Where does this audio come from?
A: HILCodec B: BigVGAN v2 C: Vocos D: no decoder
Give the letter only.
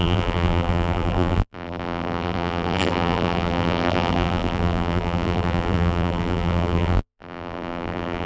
B